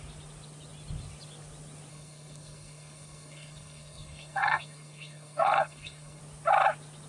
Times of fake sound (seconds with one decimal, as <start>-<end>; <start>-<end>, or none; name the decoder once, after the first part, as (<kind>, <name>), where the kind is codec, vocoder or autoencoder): 1.9-6.2 (codec, SNAC)